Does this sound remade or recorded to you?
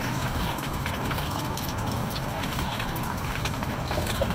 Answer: remade